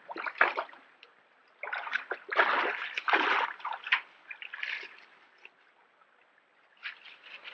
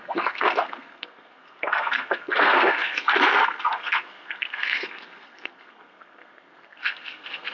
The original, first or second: first